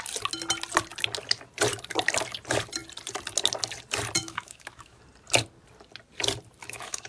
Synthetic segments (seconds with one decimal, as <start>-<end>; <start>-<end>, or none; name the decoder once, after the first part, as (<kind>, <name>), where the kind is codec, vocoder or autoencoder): 4.2-5.0 (autoencoder, DAC-VAE); 6.6-7.1